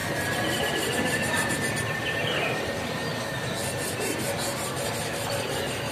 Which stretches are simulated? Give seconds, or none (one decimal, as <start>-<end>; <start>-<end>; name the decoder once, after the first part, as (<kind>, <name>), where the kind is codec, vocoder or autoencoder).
0.6-1.2 (vocoder, BigVGAN v2); 2.1-3.0; 4.3-5.9